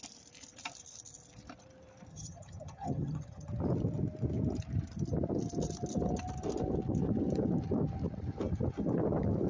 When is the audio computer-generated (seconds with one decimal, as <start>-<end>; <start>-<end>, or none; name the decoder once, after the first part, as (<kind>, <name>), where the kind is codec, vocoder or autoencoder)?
2.1-3.5 (vocoder, HiFi-GAN)